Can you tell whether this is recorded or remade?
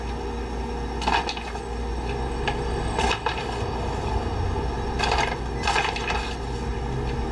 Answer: recorded